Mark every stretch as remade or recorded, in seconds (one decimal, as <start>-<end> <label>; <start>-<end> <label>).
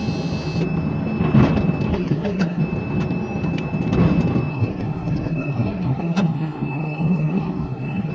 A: 0.0-1.9 recorded; 1.9-2.6 remade; 2.6-4.5 recorded; 4.5-8.1 remade